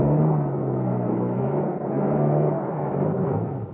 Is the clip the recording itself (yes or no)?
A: no